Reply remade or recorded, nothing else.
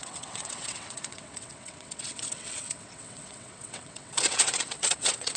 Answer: remade